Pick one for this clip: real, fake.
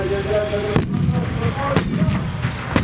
real